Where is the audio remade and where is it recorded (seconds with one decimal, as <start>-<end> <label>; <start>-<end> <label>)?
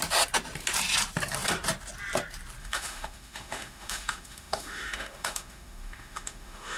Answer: 0.0-2.6 recorded; 2.6-6.8 remade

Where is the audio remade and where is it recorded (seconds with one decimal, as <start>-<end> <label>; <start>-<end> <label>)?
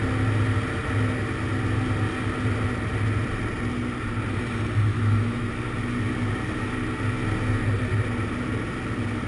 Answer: 0.0-4.9 recorded; 4.9-5.5 remade; 5.5-9.3 recorded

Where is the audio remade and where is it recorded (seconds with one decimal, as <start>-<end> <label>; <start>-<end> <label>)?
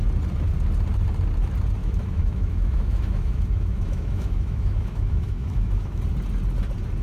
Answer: 0.0-1.8 recorded; 1.8-6.0 remade; 6.0-7.0 recorded